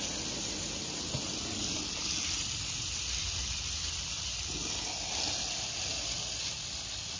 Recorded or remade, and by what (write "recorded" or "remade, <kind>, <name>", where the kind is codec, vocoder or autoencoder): recorded